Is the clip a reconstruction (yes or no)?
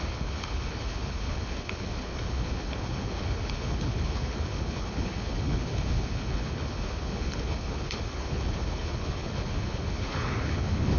yes